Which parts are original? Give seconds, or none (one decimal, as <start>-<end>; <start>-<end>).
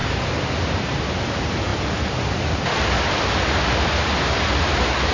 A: 0.0-5.1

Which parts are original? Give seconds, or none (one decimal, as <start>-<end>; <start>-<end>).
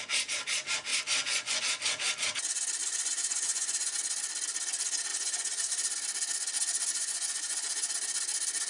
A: 0.0-0.9; 1.6-2.8; 4.0-5.1; 5.7-6.9; 7.9-8.7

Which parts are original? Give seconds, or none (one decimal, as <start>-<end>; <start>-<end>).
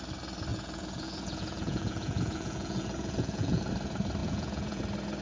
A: 0.0-0.5; 3.6-4.2; 4.8-5.2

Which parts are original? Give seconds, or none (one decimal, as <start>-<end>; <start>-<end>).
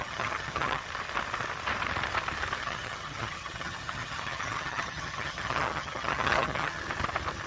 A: 0.8-2.6; 6.8-7.5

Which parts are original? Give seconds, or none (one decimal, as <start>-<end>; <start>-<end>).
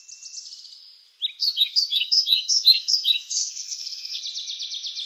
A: 0.0-1.4; 4.2-5.1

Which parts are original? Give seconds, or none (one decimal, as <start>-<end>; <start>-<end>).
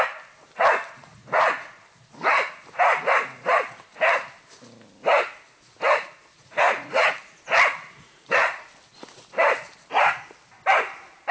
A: 0.0-1.0; 1.8-6.4; 7.2-7.8; 8.7-11.3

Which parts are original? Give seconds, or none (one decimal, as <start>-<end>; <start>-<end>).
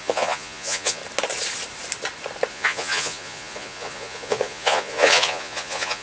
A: 1.0-2.5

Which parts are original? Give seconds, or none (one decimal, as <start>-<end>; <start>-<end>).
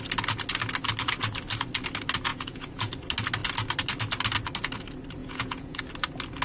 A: 0.0-2.3; 2.9-5.2; 5.8-6.4